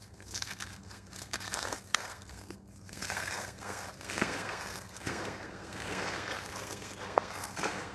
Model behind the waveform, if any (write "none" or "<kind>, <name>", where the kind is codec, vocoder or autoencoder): codec, SNAC